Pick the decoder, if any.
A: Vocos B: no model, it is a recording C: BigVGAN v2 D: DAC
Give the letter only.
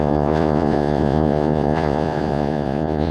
A